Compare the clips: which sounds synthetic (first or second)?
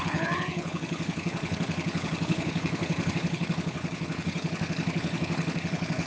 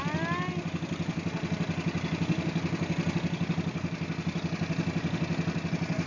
first